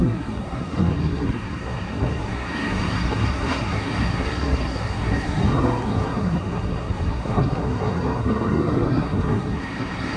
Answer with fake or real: fake